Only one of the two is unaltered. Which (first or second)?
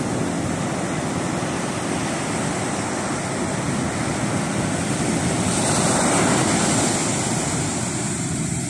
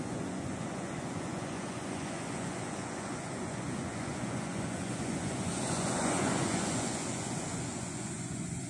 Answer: first